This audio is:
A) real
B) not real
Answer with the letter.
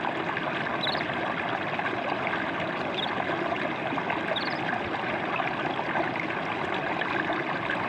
A